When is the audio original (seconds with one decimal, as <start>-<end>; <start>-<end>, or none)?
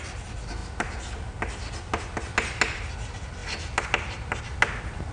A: 0.0-5.1